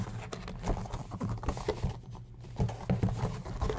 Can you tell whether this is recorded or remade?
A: recorded